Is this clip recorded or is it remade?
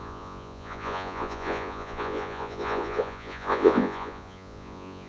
remade